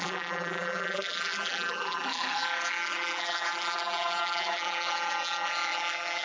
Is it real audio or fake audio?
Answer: fake